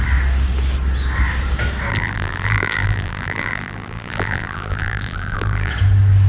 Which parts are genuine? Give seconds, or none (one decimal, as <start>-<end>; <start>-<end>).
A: 0.0-1.9; 5.7-6.3